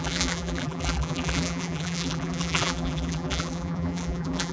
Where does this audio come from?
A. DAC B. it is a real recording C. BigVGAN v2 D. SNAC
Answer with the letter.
C